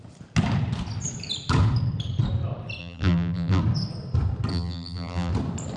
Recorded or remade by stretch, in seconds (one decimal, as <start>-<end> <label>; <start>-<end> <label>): 0.0-2.8 recorded; 2.8-3.6 remade; 3.6-4.5 recorded; 4.5-5.3 remade; 5.3-5.8 recorded